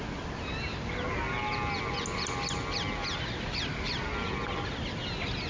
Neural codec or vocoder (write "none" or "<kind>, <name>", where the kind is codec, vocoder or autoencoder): none